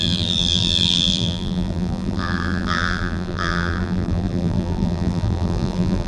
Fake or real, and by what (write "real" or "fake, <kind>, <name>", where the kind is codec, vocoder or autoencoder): fake, vocoder, BigVGAN v2